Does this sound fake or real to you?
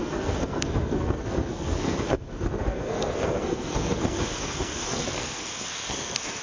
fake